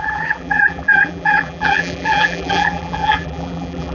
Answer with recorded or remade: remade